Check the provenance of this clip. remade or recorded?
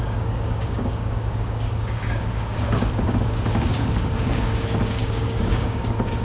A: remade